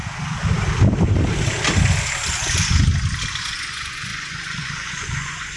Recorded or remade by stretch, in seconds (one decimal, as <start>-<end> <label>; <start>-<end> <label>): 0.0-3.4 recorded; 3.4-5.6 remade